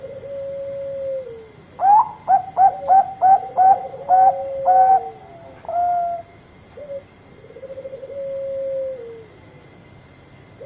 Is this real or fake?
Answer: real